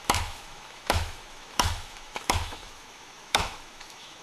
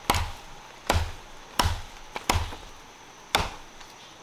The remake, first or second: first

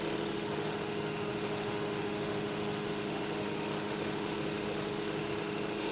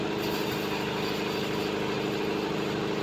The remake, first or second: first